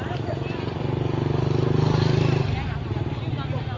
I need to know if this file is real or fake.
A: real